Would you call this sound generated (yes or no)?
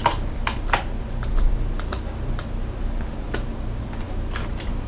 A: no